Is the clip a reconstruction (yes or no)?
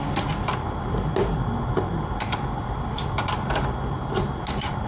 no